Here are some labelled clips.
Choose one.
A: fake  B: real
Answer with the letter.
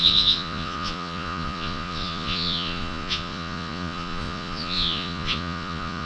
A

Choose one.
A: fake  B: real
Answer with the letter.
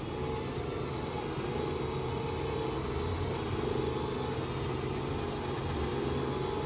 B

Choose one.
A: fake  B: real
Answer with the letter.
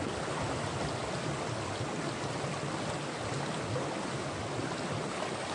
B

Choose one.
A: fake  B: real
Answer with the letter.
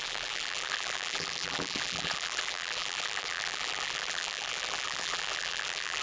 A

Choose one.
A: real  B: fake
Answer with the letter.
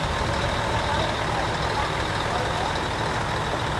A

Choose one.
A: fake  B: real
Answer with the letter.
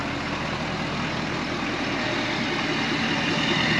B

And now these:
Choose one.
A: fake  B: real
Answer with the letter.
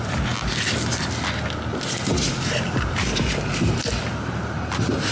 B